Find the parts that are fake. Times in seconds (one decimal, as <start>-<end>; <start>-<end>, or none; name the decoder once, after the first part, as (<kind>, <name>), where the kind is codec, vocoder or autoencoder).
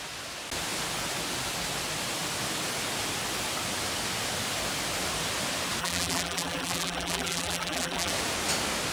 5.8-8.1 (vocoder, BigVGAN v2)